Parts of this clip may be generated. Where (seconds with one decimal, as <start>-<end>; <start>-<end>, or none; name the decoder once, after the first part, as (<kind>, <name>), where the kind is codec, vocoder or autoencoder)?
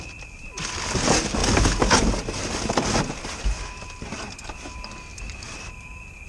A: 0.0-1.4 (vocoder, BigVGAN v2); 3.4-6.3